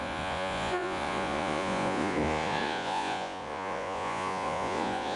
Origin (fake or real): fake